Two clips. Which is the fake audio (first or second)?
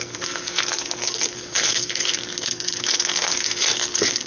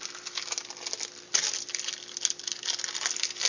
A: first